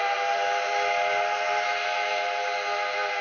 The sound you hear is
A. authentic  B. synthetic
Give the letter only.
A